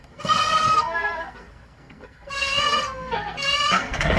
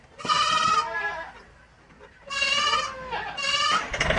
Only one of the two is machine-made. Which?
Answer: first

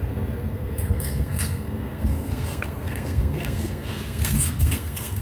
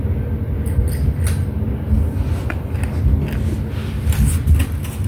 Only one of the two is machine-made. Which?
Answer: first